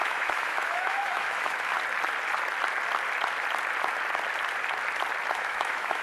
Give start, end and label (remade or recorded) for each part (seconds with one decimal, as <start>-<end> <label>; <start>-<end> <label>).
0.0-1.7 remade; 1.7-5.3 recorded; 5.3-6.0 remade